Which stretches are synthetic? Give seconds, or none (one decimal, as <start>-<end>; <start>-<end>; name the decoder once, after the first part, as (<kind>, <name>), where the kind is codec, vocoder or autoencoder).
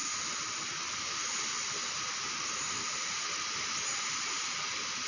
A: 0.0-3.1 (vocoder, BigVGAN v2); 3.9-5.1